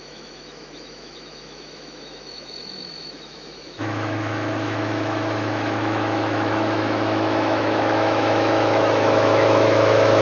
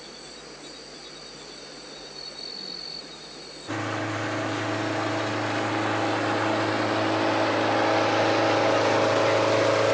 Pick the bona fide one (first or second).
second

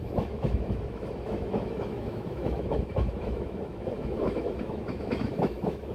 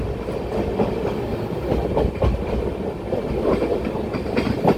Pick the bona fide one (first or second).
second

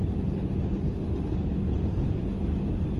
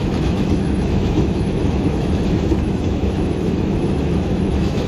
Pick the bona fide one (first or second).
first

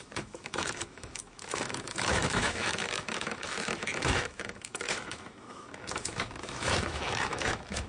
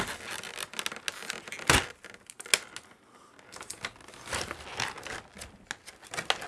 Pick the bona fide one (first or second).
second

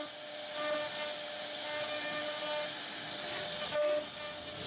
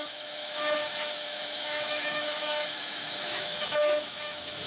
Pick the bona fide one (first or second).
first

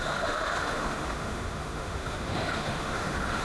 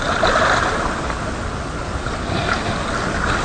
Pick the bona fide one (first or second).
second